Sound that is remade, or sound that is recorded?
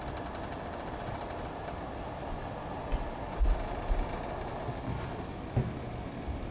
recorded